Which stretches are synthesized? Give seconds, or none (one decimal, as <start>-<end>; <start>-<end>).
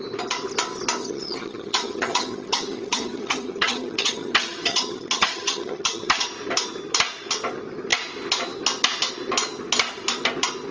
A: 1.0-6.2